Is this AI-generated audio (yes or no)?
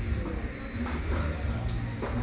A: no